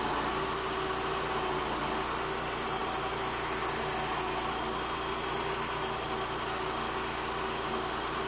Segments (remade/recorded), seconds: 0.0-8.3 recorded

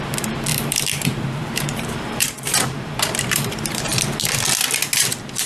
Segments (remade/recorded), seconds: 0.0-0.5 recorded; 0.5-3.8 remade; 3.8-5.5 recorded

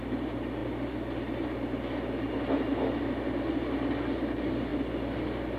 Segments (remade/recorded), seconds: 0.0-4.7 remade; 4.7-5.6 recorded

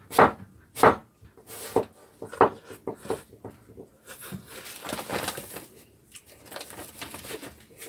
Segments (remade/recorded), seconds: 0.0-7.9 recorded